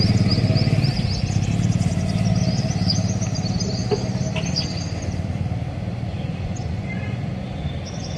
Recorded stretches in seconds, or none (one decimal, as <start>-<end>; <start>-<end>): 0.0-6.1; 7.3-8.2